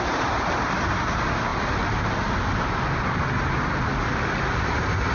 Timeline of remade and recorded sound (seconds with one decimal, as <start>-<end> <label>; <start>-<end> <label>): 0.0-5.1 recorded